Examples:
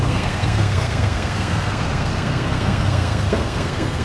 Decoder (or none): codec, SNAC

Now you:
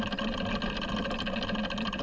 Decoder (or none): none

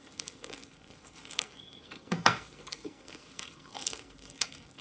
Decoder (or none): codec, SNAC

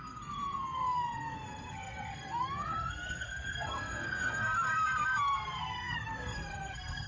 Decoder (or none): codec, SNAC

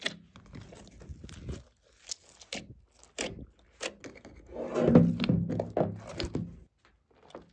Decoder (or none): none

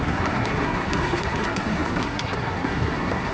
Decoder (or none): codec, SNAC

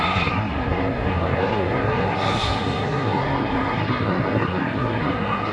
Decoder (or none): codec, SNAC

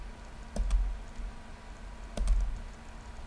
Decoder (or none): none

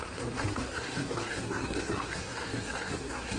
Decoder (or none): codec, SNAC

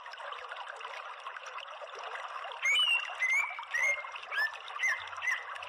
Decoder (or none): none